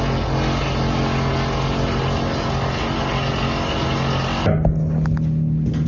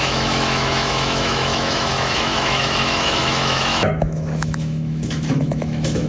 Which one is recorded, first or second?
first